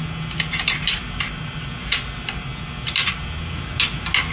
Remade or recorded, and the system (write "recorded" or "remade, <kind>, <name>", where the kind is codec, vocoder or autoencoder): recorded